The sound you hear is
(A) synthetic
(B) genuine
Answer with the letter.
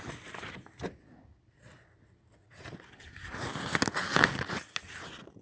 B